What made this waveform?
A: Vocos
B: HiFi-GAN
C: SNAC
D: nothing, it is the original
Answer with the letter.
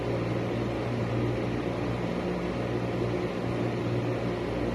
D